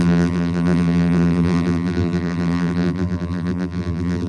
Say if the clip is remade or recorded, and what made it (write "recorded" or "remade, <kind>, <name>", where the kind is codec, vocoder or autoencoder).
remade, vocoder, BigVGAN v2